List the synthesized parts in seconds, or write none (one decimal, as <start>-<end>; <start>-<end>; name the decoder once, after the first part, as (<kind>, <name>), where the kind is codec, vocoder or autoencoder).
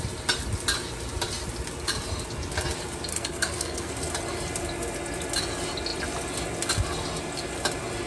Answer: 3.1-3.9 (codec, SNAC)